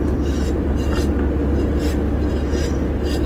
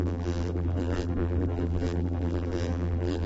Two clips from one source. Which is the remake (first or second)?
second